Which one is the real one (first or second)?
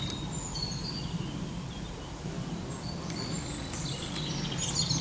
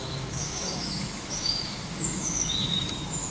first